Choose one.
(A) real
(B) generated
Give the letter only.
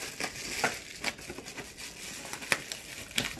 A